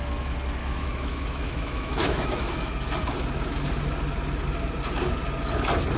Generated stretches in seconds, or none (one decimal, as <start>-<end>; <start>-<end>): 0.6-2.7